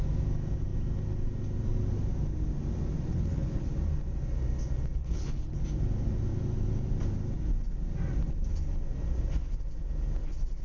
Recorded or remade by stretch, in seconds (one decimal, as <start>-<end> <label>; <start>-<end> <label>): 0.0-3.1 recorded; 3.1-3.7 remade; 3.7-5.0 recorded; 5.0-5.6 remade; 5.6-10.6 recorded